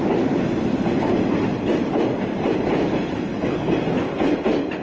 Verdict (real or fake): real